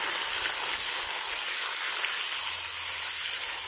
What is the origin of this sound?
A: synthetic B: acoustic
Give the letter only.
B